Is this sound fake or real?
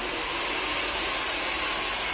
real